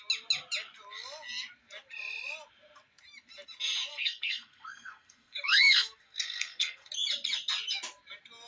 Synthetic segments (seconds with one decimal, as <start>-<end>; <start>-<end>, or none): 3.9-6.9